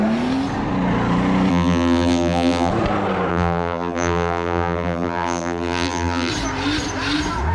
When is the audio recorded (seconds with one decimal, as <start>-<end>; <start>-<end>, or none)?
0.0-1.5; 2.7-3.3; 6.3-7.5